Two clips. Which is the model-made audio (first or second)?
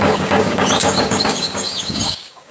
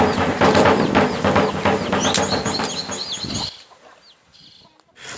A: first